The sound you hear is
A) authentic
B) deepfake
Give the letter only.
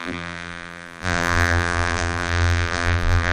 B